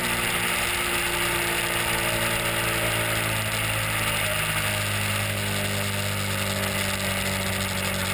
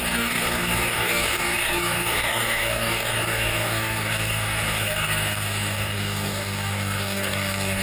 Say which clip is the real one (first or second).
first